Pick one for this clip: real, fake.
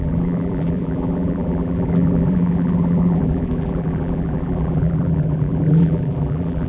fake